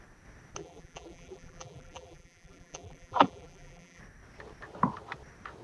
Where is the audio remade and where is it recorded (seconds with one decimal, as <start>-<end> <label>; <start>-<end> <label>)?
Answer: 0.0-0.6 recorded; 0.6-4.0 remade; 4.0-5.6 recorded